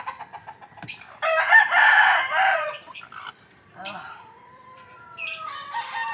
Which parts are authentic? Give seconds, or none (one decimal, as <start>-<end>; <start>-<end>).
0.0-2.5; 3.0-6.1